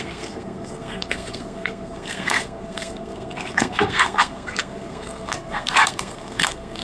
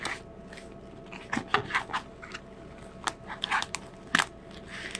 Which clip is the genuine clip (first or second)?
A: second